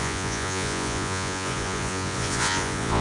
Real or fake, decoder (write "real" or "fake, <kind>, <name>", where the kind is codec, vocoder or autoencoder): fake, vocoder, Vocos